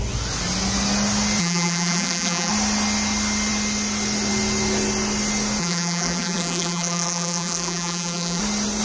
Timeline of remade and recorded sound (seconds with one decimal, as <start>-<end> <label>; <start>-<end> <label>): 0.0-1.4 recorded; 1.4-2.5 remade; 2.5-5.6 recorded; 5.6-8.4 remade; 8.4-8.8 recorded